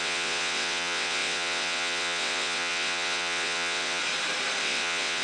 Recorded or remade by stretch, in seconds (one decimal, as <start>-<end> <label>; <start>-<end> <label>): 0.0-4.0 remade; 4.0-4.6 recorded; 4.6-5.2 remade